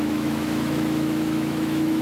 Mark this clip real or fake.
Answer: fake